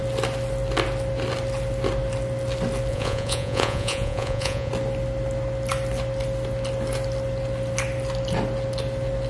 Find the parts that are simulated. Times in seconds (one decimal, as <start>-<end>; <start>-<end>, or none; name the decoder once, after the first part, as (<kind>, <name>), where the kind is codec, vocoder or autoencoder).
2.9-4.7 (vocoder, Vocos)